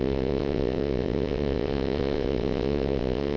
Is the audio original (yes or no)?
no